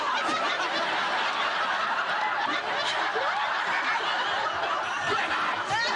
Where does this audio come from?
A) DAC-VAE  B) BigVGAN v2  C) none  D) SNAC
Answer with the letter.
C